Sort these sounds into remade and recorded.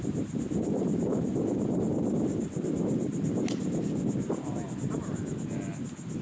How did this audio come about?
recorded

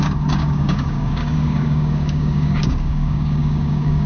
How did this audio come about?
remade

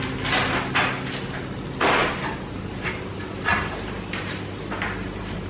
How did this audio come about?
recorded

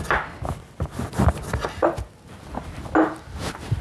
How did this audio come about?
recorded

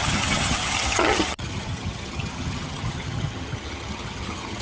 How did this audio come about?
remade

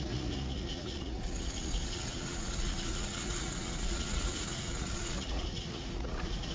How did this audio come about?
remade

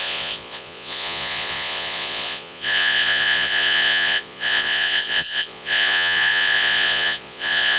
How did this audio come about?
remade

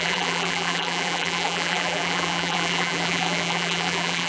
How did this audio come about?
remade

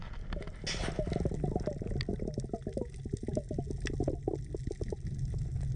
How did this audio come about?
recorded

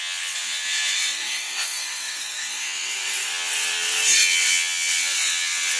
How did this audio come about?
remade